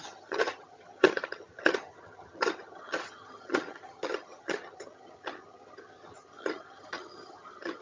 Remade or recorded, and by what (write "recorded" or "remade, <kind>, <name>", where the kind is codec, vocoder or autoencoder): remade, vocoder, HiFi-GAN